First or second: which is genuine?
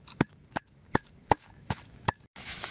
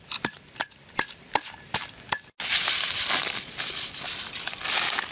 second